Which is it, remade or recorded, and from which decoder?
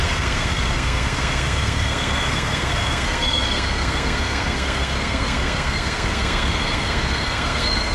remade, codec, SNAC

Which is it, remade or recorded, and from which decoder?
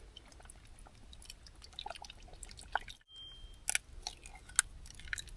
recorded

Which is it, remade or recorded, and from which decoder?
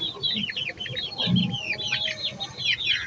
recorded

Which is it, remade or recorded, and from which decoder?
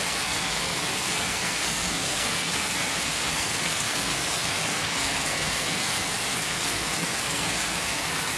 remade, codec, SNAC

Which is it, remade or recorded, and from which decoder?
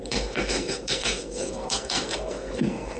remade, codec, SNAC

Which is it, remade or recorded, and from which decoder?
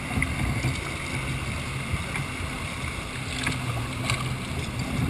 recorded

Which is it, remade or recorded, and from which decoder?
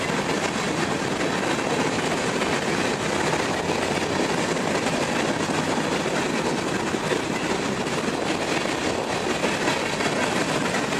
recorded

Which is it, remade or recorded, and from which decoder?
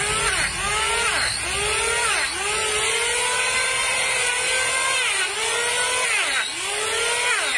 recorded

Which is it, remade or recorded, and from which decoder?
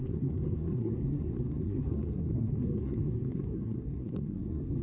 remade, codec, SNAC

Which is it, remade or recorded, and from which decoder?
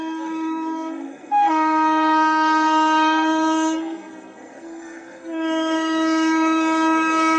remade, codec, SNAC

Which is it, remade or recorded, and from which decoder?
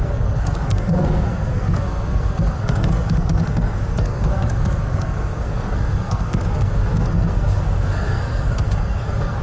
remade, codec, SNAC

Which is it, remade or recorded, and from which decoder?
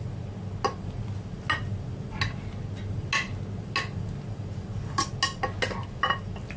recorded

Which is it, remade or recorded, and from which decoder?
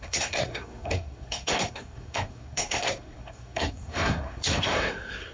remade, codec, SNAC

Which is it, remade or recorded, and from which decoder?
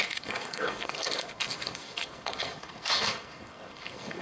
remade, codec, SNAC